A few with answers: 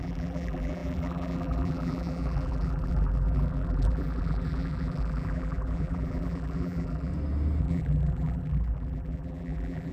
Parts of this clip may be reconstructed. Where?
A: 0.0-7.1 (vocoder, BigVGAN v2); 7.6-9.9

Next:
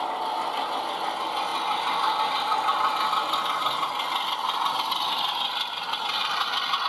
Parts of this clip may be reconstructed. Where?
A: none

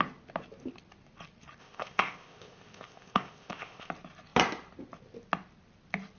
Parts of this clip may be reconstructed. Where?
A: 1.6-3.9 (codec, ZipCodec)

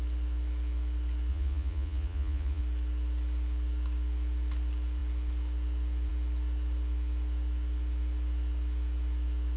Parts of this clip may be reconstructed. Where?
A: 1.3-2.6 (vocoder, Vocos)